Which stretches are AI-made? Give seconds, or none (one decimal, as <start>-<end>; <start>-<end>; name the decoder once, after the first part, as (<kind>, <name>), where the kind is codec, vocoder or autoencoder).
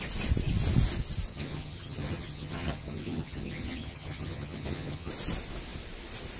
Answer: 1.3-5.1 (vocoder, HiFi-GAN)